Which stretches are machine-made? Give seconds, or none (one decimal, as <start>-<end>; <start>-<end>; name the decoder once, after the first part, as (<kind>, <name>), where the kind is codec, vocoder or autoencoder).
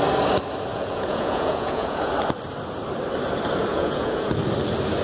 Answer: 0.7-2.1 (vocoder, Vocos); 3.7-4.4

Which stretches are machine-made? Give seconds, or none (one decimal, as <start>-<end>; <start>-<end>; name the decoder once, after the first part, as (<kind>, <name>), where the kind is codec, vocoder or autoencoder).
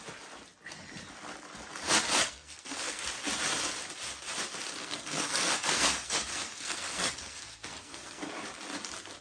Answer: 2.2-3.1 (codec, SNAC); 4.8-8.2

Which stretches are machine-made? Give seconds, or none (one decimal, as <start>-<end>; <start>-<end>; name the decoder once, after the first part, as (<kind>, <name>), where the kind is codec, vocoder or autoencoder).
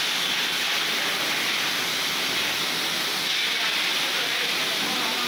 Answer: 3.9-4.5 (vocoder, BigVGAN v2)